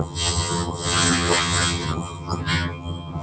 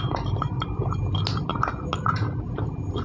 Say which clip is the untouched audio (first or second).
second